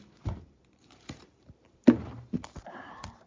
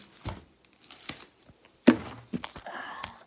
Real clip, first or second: second